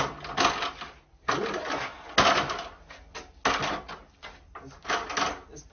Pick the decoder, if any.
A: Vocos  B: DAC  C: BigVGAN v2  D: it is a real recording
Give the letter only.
D